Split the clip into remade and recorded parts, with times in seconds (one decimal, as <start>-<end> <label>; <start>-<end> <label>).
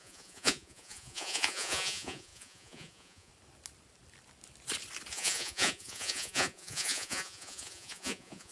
0.0-3.3 remade; 3.3-5.1 recorded; 5.1-8.5 remade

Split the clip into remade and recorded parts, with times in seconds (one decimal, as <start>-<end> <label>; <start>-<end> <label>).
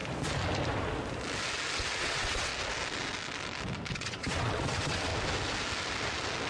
0.0-2.0 recorded; 2.0-2.5 remade; 2.5-3.9 recorded; 3.9-5.1 remade; 5.1-6.5 recorded